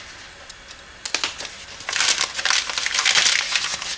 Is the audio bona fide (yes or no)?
yes